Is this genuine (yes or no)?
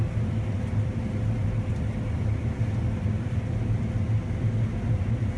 yes